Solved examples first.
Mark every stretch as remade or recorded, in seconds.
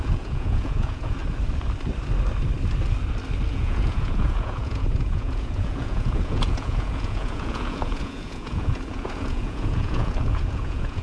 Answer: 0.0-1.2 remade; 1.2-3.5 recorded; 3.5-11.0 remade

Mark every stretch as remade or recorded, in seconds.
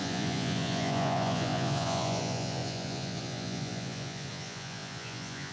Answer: 0.0-5.5 remade